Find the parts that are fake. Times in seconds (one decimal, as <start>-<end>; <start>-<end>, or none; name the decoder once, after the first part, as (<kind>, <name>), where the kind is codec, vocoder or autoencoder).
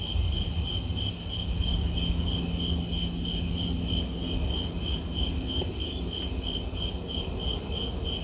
none